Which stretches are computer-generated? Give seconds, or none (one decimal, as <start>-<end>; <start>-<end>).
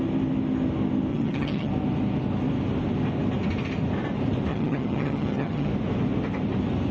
1.1-1.7; 4.5-5.7